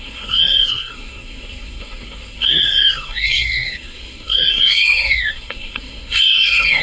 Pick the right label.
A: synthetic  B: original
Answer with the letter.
A